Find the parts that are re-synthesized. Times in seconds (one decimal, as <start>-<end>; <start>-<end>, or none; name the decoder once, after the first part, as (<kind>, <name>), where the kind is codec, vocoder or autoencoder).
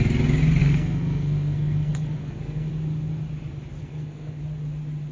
0.6-2.7 (codec, SNAC); 3.8-4.4